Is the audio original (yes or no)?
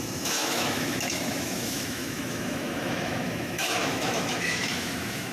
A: no